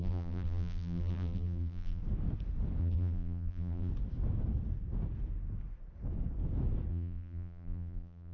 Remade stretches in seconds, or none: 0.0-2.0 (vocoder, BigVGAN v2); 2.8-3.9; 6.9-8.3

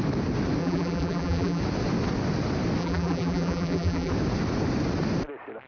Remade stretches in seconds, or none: 0.6-1.6 (vocoder, BigVGAN v2); 2.8-4.1

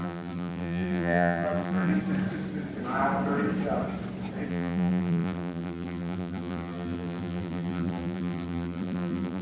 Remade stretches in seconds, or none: 0.0-1.9 (vocoder, BigVGAN v2); 4.5-9.4

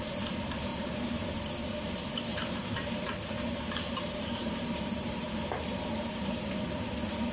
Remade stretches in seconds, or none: 0.7-1.3 (vocoder, BigVGAN v2); 2.3-6.4

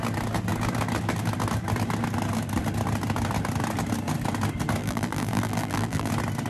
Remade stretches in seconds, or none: 4.8-6.1 (vocoder, BigVGAN v2)

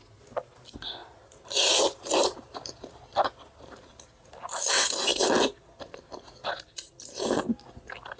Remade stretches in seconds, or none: 1.0-2.7 (vocoder, BigVGAN v2)